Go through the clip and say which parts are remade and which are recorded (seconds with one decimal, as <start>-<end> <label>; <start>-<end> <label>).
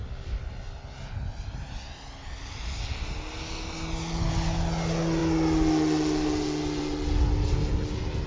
0.0-8.3 recorded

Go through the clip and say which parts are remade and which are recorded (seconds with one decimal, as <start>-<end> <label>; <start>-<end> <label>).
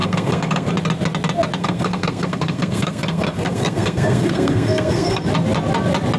0.0-0.7 remade; 0.7-1.6 recorded; 1.6-5.2 remade; 5.2-6.2 recorded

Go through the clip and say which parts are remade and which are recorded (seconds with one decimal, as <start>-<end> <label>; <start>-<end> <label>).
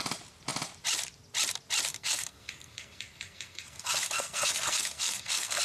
0.0-1.9 recorded; 1.9-5.6 remade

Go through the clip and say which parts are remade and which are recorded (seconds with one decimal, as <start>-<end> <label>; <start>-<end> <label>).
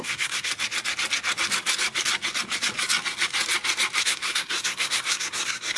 0.0-0.5 remade; 0.5-4.0 recorded; 4.0-5.8 remade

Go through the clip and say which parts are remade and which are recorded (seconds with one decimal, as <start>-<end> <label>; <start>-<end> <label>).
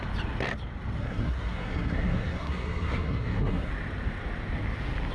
0.0-1.0 recorded; 1.0-3.7 remade; 3.7-5.1 recorded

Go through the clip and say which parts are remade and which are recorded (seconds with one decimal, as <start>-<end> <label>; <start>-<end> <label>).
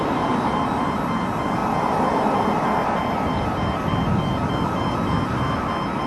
0.0-6.1 recorded